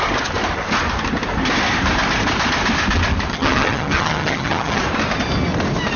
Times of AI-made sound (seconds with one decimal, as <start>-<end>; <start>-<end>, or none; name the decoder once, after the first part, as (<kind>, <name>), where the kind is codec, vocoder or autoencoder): 3.3-4.8 (vocoder, HiFi-GAN)